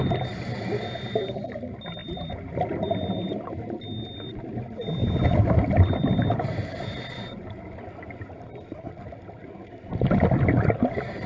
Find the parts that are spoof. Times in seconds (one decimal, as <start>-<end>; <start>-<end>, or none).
2.0-3.6; 5.0-7.9